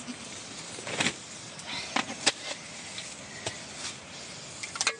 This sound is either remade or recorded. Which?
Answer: recorded